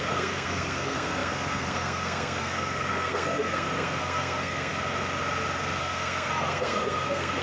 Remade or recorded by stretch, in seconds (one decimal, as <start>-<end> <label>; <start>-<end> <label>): 0.0-4.7 remade; 4.7-5.8 recorded; 5.8-7.4 remade